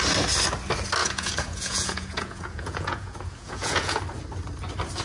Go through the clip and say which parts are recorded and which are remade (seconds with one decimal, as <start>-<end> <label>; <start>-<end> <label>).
0.0-1.0 recorded; 1.0-4.0 remade; 4.0-5.0 recorded